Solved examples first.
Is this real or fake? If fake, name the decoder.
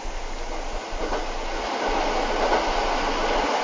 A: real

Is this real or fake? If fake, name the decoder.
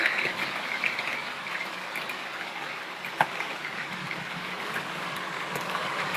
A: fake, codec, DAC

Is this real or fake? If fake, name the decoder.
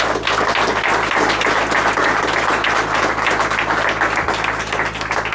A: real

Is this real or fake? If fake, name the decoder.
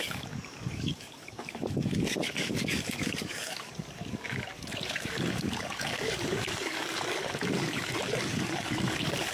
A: fake, codec, DAC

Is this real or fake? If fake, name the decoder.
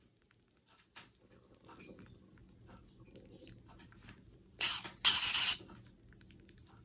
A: real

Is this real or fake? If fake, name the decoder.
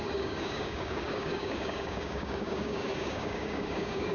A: fake, codec, DAC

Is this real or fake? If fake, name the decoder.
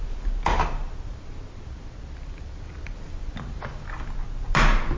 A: real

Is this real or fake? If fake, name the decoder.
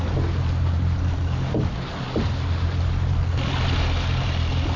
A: real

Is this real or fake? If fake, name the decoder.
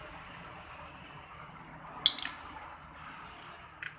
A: real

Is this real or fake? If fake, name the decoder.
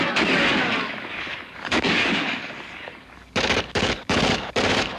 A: fake, codec, DAC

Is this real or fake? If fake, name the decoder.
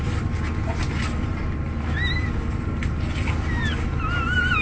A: real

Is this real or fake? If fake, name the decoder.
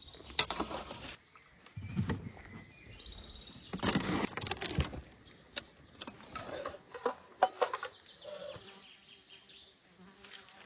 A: real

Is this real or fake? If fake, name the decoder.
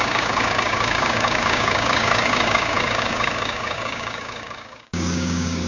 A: fake, codec, DAC